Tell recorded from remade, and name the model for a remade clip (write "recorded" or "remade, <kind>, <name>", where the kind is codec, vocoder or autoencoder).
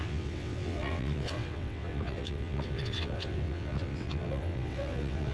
remade, vocoder, WaveNeXt